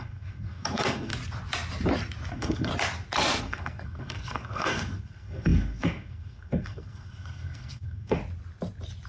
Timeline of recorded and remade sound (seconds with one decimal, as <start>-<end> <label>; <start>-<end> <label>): 0.0-1.1 remade; 1.1-2.3 recorded; 2.3-2.7 remade; 2.7-3.4 recorded; 3.4-8.2 remade; 8.2-9.1 recorded

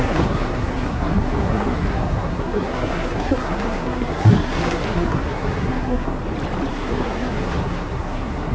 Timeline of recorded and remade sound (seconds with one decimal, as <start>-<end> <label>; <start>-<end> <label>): 0.0-6.2 remade; 6.2-6.7 recorded; 6.7-8.5 remade

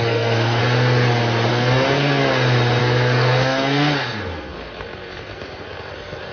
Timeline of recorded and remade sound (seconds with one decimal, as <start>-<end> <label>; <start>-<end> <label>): 0.0-0.6 remade; 0.6-1.5 recorded; 1.5-2.2 remade; 2.2-2.8 recorded; 2.8-6.3 remade

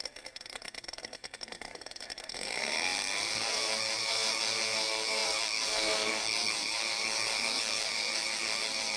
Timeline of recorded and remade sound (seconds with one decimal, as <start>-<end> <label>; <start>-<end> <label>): 0.0-9.0 remade

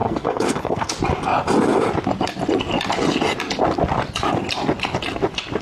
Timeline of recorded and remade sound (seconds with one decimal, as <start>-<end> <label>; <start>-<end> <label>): 0.0-0.9 remade; 0.9-5.6 recorded

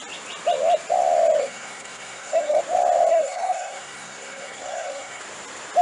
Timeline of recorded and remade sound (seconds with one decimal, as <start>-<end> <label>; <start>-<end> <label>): 0.0-1.4 recorded; 1.4-2.6 remade; 2.6-3.1 recorded; 3.1-5.2 remade; 5.2-5.8 recorded